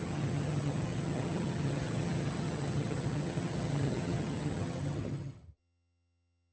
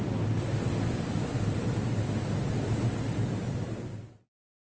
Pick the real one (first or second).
second